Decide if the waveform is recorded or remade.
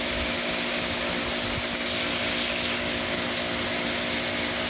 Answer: recorded